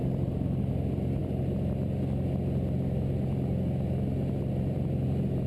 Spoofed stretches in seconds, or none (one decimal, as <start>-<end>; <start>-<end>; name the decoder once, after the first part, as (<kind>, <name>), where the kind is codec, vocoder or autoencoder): 0.0-0.7 (vocoder, BigVGAN v2)